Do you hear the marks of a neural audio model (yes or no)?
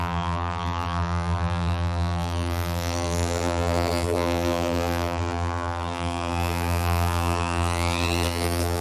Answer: yes